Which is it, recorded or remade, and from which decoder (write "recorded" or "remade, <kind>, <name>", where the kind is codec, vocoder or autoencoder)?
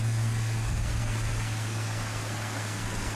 remade, codec, SNAC